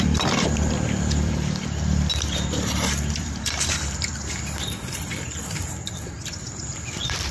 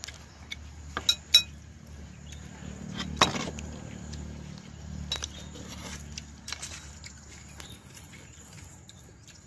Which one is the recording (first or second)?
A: second